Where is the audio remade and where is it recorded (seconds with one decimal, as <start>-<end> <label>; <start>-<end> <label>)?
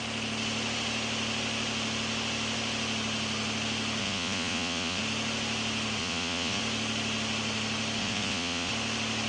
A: 0.0-4.0 recorded; 4.0-5.0 remade; 5.0-6.0 recorded; 6.0-6.6 remade; 6.6-8.0 recorded; 8.0-8.7 remade; 8.7-9.3 recorded